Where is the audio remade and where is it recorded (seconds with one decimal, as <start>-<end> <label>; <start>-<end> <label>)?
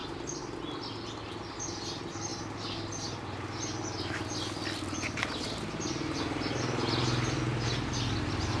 0.0-8.6 recorded